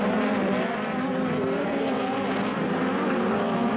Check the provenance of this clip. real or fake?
real